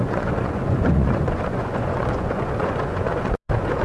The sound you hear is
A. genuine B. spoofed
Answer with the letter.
B